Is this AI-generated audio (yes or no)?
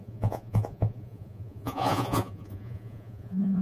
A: yes